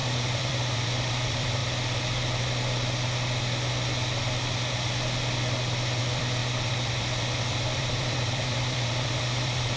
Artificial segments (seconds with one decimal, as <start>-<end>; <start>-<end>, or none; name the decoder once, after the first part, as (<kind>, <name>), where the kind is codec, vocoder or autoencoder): 0.0-1.6 (vocoder, BigVGAN v2); 6.0-9.8